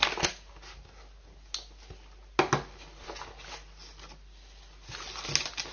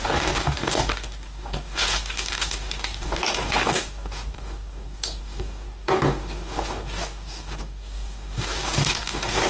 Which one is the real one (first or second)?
first